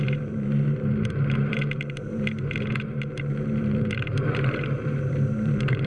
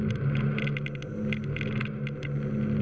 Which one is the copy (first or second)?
first